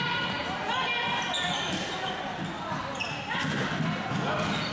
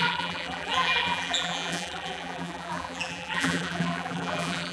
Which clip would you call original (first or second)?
first